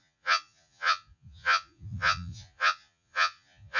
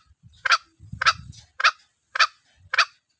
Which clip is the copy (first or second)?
first